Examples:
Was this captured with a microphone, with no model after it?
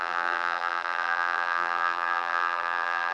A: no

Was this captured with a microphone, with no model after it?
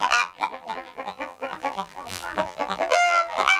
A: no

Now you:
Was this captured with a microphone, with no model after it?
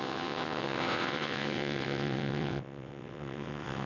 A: no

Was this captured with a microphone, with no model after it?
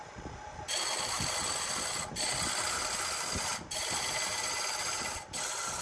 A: yes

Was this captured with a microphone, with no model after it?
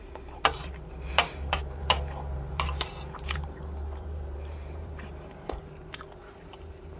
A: no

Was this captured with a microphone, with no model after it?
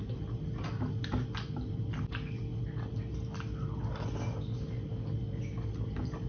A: yes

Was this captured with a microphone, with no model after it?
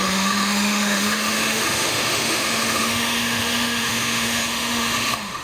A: no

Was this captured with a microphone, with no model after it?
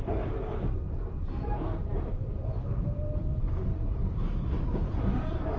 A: no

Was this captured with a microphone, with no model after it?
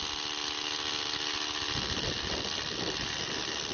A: yes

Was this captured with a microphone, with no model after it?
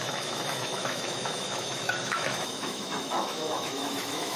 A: no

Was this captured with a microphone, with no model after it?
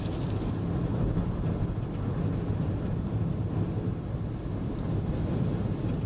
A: yes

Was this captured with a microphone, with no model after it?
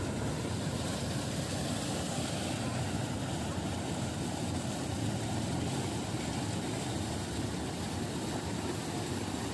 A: yes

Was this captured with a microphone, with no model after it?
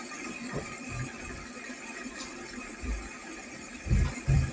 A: yes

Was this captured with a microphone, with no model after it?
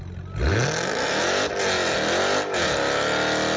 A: yes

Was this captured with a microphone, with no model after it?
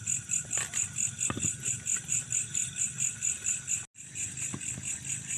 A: yes